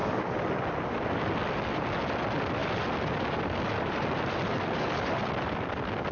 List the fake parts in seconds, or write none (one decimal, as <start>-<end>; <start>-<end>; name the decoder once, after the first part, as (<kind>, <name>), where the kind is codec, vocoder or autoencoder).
none